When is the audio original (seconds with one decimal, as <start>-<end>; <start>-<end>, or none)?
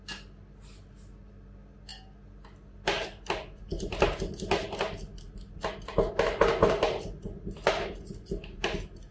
0.0-9.1